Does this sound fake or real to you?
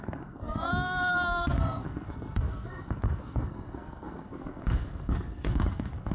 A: fake